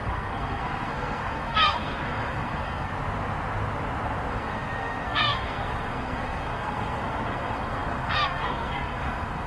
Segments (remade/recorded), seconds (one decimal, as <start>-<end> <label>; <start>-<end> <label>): 0.0-2.9 remade; 2.9-4.3 recorded; 4.3-9.5 remade